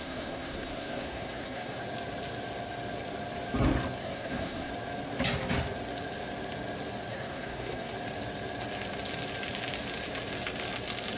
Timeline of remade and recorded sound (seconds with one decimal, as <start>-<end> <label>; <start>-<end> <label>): 0.0-1.8 remade; 1.8-4.0 recorded; 4.0-4.7 remade; 4.7-7.1 recorded; 7.1-7.9 remade; 7.9-11.2 recorded